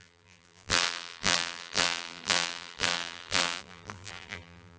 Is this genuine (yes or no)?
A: no